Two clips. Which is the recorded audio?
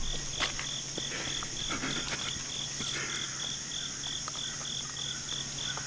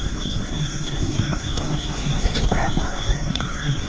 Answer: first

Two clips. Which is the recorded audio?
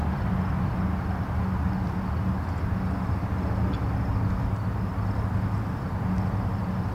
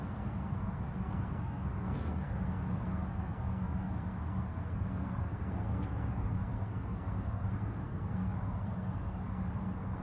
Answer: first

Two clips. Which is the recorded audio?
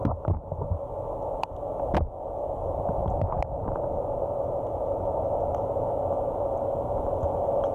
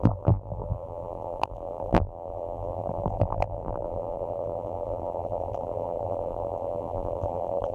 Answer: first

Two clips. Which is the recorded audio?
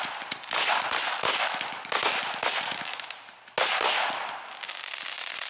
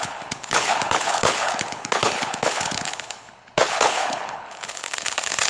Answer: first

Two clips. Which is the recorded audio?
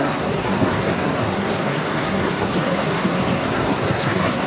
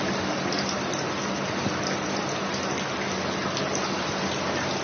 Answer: second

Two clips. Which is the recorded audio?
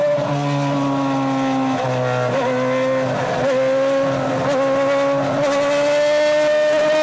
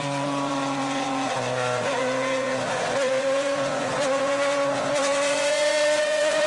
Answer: first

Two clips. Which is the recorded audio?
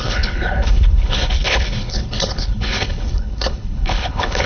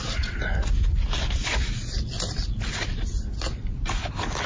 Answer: second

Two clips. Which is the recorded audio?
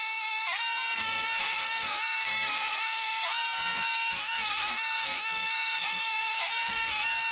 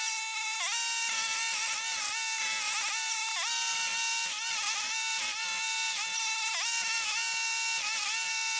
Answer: second